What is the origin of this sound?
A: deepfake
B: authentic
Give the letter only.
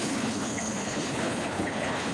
A